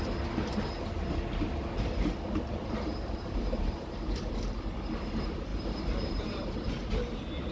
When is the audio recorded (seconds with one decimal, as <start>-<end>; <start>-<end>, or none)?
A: 0.0-2.5; 4.3-5.5; 6.7-7.5